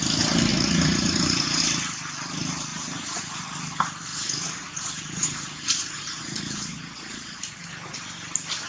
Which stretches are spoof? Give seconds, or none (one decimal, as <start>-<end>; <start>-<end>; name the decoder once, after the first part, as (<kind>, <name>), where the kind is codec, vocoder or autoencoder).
0.5-1.6 (vocoder, Vocos); 2.7-3.4; 4.1-7.6